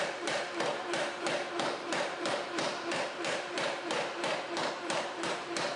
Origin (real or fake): fake